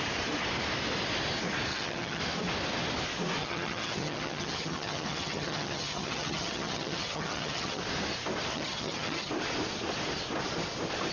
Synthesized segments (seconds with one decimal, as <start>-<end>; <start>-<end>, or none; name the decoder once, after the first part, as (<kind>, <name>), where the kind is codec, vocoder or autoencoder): 1.7-2.2 (vocoder, HiFi-GAN); 3.4-7.8; 8.5-9.3